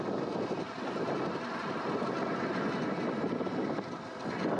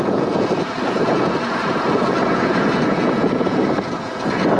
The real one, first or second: first